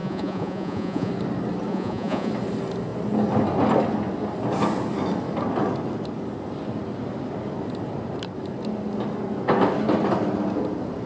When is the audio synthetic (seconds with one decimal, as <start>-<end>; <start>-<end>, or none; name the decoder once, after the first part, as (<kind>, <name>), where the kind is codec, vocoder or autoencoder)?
0.0-1.1 (vocoder, Vocos); 1.7-2.3